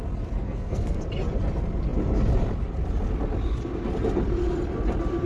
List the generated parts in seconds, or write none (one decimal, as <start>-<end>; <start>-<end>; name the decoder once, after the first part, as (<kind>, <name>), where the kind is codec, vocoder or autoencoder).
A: 0.4-1.0 (codec, SNAC)